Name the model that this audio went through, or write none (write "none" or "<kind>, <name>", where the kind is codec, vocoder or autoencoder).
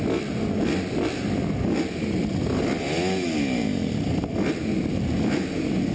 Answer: none